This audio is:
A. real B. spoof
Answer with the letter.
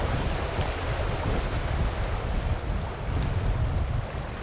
A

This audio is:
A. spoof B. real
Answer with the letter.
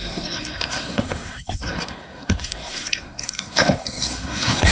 A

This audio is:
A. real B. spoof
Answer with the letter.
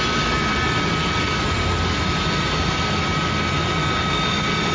A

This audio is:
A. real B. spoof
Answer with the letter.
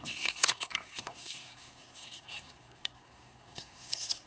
B